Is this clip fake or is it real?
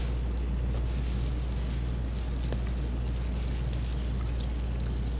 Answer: real